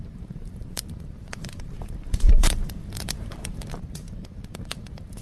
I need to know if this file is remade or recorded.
remade